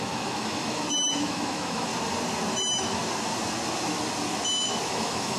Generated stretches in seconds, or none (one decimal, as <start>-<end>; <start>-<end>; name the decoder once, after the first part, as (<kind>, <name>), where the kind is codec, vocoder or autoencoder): 0.0-1.9 (autoencoder, DAC-VAE); 2.5-3.0; 4.9-5.4